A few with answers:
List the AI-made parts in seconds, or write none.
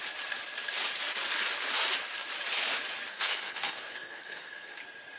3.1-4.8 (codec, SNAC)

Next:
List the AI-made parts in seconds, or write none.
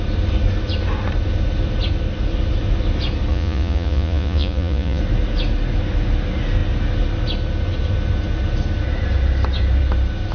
3.3-5.0 (vocoder, Vocos)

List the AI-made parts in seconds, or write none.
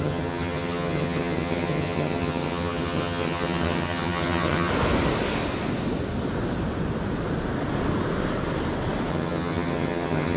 0.0-4.7 (vocoder, HiFi-GAN); 9.1-10.4